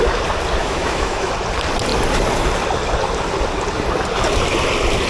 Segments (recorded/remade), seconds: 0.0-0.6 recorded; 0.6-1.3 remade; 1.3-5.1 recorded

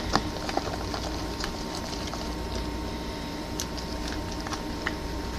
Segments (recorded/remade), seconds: 0.0-5.4 recorded

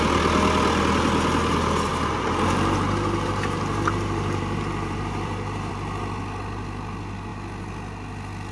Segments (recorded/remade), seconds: 0.0-1.9 recorded; 1.9-5.7 remade; 5.7-8.5 recorded

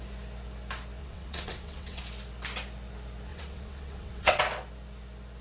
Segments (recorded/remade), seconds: 0.0-1.0 recorded; 1.0-2.0 remade; 2.0-3.3 recorded; 3.3-4.4 remade; 4.4-5.4 recorded

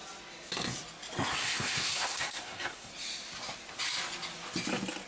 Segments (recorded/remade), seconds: 0.0-1.3 recorded; 1.3-2.9 remade; 2.9-5.1 recorded

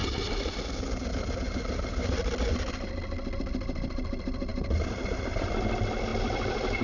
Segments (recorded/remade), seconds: 0.0-3.4 recorded; 3.4-6.8 remade